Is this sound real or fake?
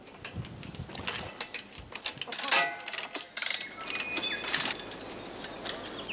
real